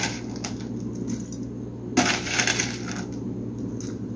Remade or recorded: recorded